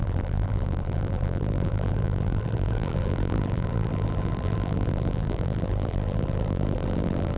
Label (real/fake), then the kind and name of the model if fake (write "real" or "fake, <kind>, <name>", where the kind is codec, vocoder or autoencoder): fake, vocoder, BigVGAN v2